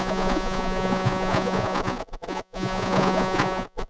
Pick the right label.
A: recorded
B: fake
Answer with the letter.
B